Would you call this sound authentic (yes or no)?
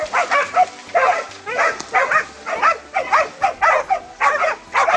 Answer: yes